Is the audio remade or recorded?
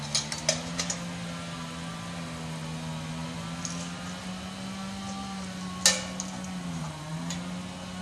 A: recorded